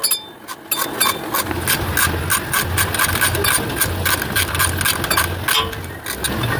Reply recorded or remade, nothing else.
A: recorded